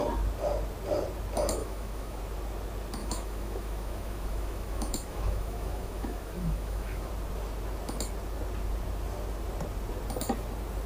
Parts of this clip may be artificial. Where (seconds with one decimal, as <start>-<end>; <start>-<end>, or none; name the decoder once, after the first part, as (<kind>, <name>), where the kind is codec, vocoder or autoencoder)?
1.6-2.2 (autoencoder, DAC-VAE); 3.0-7.1